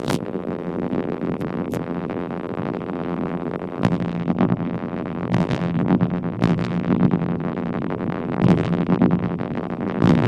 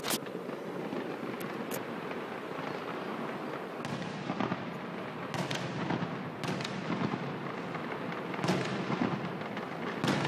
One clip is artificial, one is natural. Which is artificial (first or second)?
first